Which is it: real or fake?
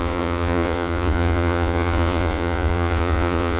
fake